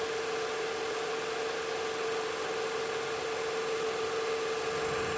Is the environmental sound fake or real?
real